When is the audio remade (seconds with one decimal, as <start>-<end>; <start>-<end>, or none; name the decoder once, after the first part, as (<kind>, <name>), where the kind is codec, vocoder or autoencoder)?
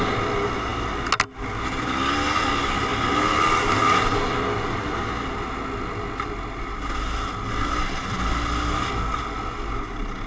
none